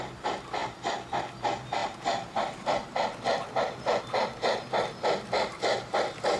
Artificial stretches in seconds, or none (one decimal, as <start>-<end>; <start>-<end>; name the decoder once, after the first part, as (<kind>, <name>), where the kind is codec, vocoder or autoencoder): 0.6-1.1 (vocoder, BigVGAN v2); 1.8-4.0